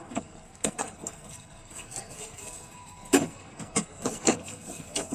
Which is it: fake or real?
fake